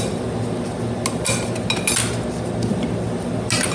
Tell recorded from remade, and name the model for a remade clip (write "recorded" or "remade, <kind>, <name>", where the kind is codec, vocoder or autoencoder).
recorded